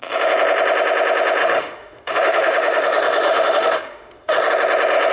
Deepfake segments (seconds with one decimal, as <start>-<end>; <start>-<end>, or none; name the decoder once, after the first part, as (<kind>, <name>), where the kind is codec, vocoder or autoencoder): 1.4-4.5 (autoencoder, DAC-VAE)